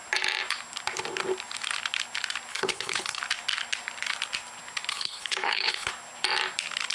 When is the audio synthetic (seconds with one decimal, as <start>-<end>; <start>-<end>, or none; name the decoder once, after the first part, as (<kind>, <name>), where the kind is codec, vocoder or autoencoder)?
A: 2.5-3.2 (codec, HILCodec); 4.9-5.9